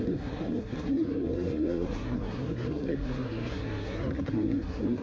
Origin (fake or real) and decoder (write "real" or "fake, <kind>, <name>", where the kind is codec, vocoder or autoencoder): fake, codec, SNAC